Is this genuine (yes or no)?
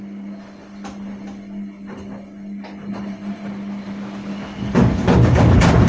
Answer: yes